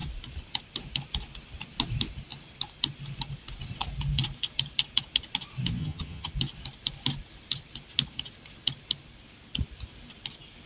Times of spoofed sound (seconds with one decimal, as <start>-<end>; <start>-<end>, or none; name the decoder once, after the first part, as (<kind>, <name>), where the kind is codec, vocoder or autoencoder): 5.8-6.3 (vocoder, HiFi-GAN)